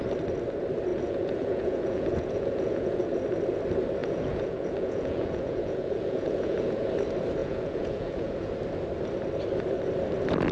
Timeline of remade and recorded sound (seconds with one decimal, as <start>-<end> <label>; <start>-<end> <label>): 0.0-0.9 recorded; 0.9-3.2 remade; 3.2-4.0 recorded; 4.0-6.9 remade; 6.9-7.4 recorded; 7.4-8.5 remade; 8.5-10.5 recorded